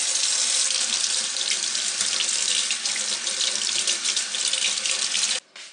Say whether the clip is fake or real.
real